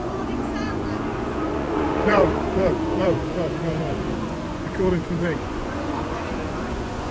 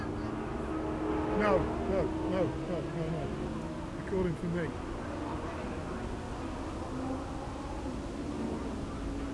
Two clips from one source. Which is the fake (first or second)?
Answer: first